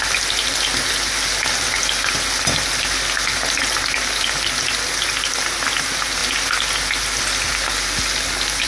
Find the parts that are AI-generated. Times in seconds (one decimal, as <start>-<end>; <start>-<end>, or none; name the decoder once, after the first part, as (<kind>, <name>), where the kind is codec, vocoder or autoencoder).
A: none